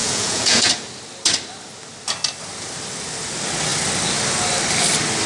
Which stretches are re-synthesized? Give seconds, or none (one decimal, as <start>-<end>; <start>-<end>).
0.0-0.7